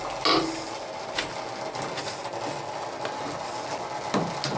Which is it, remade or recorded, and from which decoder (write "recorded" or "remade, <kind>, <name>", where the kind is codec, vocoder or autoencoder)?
recorded